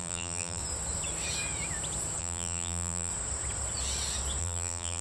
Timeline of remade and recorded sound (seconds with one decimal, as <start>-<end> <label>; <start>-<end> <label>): 0.0-0.6 remade; 0.6-2.2 recorded; 2.2-3.1 remade; 3.1-4.4 recorded; 4.4-5.0 remade